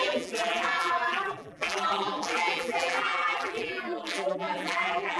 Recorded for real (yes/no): no